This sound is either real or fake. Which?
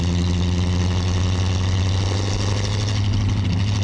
real